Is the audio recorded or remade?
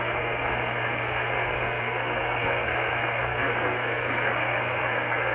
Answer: remade